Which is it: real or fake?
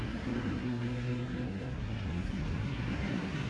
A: fake